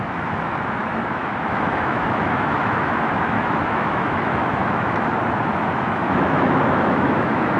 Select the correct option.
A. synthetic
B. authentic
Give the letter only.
A